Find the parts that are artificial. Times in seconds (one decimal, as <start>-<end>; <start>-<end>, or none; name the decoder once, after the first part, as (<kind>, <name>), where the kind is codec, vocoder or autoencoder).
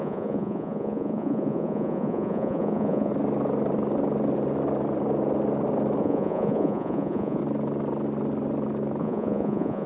0.0-3.1 (vocoder, Vocos); 6.0-7.4; 9.0-9.9